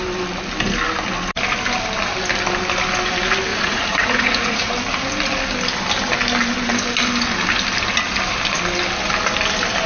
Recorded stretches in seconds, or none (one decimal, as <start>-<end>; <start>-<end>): 0.0-3.5; 4.7-9.9